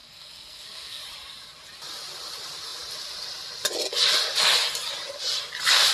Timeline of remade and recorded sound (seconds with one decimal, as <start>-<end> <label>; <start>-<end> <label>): 0.0-1.0 remade; 1.0-5.9 recorded